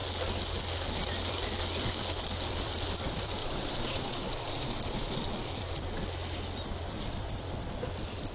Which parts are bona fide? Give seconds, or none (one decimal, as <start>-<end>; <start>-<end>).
0.0-3.4; 5.5-8.3